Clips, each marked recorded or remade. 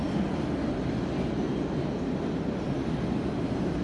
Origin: recorded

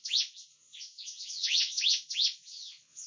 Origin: remade